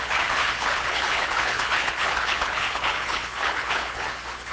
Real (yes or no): no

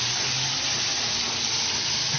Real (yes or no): yes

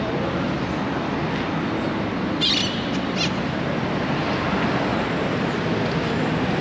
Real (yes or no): yes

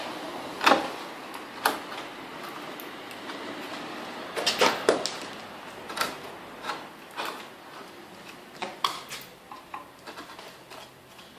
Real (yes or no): yes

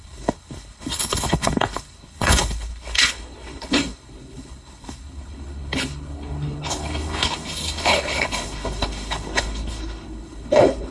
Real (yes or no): no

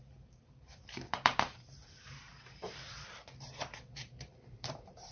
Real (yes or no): no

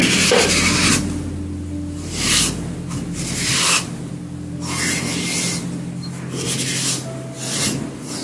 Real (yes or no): yes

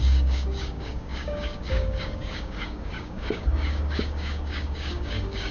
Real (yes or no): no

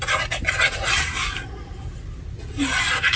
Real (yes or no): yes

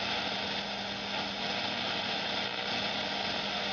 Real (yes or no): yes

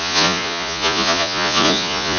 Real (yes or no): no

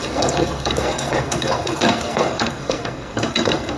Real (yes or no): no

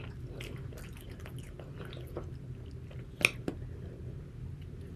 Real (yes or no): yes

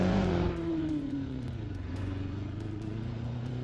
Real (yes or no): no